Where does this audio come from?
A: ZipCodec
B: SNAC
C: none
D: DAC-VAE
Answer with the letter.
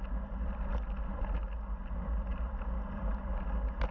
C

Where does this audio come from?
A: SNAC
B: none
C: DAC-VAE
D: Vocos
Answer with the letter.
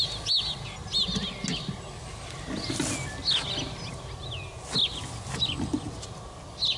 B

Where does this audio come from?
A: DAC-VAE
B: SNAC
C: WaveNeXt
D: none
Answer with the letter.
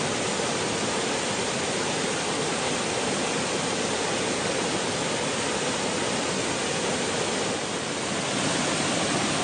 D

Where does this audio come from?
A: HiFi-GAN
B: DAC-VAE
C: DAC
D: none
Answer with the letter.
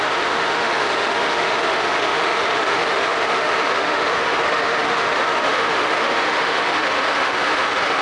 B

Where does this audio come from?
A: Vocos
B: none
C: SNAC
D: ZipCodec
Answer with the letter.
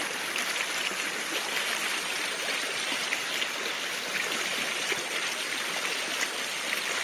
B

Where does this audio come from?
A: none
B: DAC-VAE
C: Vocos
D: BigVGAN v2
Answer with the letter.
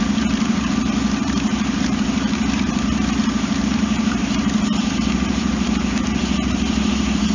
D